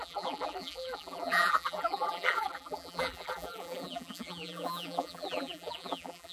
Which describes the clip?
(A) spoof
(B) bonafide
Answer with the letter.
A